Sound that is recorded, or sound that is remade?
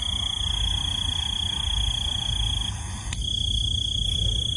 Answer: recorded